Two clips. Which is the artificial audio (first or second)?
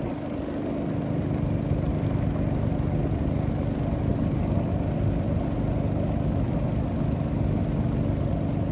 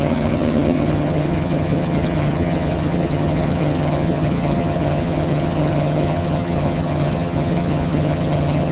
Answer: second